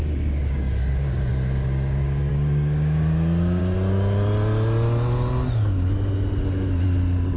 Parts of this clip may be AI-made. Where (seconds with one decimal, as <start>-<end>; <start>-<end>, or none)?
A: 0.0-3.6